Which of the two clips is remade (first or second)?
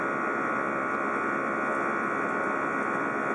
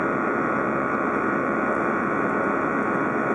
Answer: second